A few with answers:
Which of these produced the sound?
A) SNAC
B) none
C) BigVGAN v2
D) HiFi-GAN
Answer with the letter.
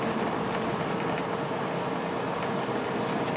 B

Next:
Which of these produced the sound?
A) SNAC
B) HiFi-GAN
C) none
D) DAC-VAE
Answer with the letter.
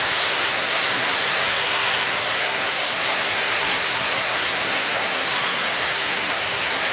A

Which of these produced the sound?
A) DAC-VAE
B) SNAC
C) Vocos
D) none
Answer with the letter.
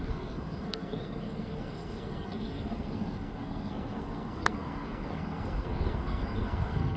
B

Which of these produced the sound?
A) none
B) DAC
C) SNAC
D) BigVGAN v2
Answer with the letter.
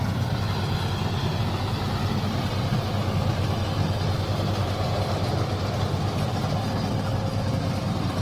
A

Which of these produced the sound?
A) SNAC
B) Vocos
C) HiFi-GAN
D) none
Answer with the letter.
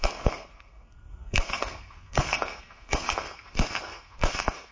A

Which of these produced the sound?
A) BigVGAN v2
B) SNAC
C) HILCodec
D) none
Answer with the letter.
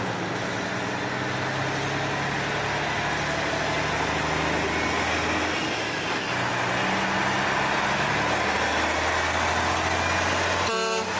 D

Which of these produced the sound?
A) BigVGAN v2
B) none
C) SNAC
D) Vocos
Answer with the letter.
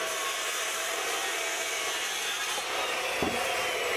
B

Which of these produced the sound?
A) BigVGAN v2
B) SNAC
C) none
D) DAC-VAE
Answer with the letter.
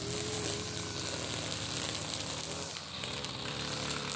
C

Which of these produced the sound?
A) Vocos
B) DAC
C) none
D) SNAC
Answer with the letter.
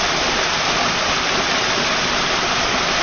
C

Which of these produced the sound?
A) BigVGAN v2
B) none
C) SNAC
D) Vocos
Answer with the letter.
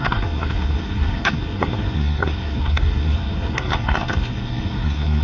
C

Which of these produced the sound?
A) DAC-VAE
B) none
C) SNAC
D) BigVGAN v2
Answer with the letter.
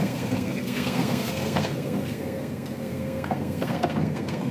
C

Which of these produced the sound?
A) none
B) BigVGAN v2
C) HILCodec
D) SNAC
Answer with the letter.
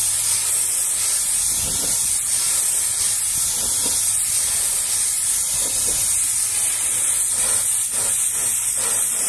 A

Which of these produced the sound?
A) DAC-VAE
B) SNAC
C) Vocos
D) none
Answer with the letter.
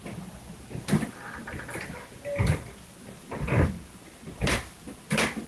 D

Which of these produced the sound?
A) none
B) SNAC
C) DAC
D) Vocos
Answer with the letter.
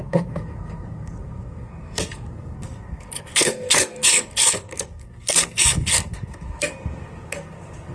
B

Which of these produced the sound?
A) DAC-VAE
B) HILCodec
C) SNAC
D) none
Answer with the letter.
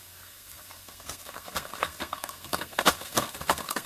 C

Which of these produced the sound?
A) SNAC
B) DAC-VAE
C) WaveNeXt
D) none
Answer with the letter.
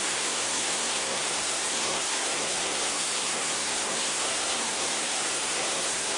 A